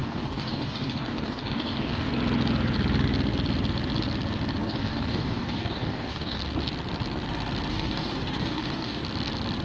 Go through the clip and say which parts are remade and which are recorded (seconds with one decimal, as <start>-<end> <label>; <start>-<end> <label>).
0.0-2.1 remade; 2.1-4.6 recorded; 4.6-6.4 remade; 6.4-7.7 recorded; 7.7-9.0 remade; 9.0-9.6 recorded